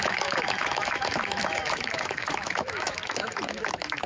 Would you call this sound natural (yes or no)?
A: no